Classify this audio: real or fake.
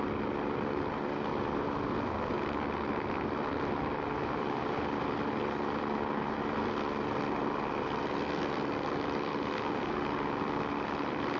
real